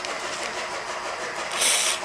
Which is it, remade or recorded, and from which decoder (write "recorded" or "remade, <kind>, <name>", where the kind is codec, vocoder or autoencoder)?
recorded